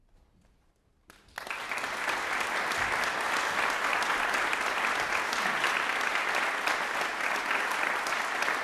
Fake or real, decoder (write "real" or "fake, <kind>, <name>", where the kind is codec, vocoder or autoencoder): real